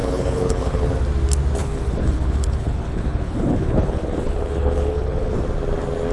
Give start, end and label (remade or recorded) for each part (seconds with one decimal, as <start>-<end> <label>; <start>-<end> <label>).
0.0-0.9 remade; 0.9-1.6 recorded; 1.6-5.3 remade; 5.3-6.1 recorded